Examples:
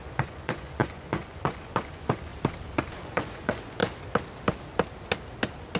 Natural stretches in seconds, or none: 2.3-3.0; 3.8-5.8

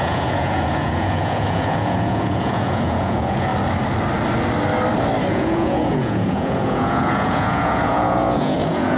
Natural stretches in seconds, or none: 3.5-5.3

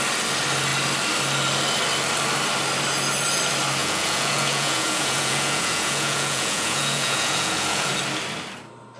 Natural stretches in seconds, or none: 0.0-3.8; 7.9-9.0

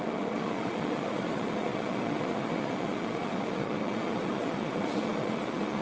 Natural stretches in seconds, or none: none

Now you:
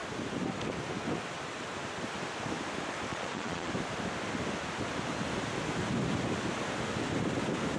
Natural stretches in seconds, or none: 0.0-3.1; 3.7-7.8

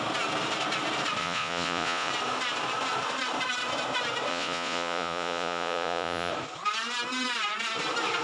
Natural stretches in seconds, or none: 0.0-1.2; 2.1-4.3; 6.3-8.2

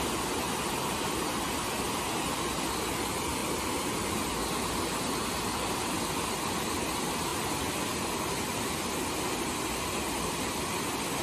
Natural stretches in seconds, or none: 0.0-11.2